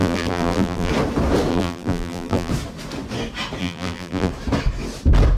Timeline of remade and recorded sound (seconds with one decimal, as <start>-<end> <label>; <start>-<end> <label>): 0.0-0.9 remade; 0.9-1.5 recorded; 1.5-2.5 remade; 2.5-3.6 recorded; 3.6-4.3 remade; 4.3-5.4 recorded